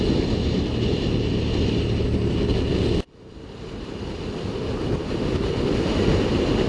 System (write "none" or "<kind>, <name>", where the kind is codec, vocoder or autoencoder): none